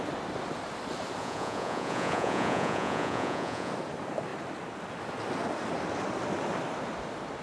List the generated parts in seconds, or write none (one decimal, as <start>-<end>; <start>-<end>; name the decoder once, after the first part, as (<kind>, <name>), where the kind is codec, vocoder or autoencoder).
1.2-3.7 (vocoder, Vocos)